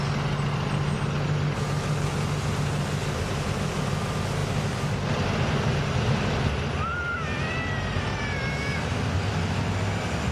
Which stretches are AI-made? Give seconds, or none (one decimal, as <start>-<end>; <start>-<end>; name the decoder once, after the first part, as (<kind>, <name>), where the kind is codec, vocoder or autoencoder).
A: none